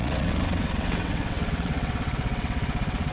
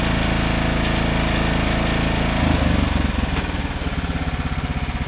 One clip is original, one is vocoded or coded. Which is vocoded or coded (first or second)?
first